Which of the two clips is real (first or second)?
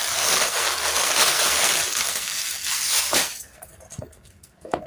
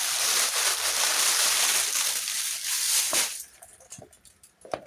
second